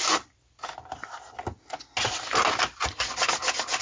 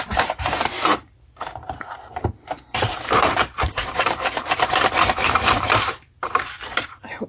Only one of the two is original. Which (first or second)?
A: first